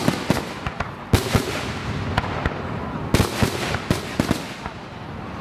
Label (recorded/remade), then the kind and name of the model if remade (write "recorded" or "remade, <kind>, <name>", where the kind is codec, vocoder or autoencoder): recorded